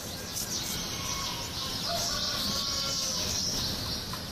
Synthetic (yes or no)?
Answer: no